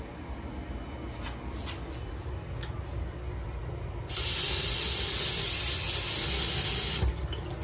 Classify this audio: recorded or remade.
recorded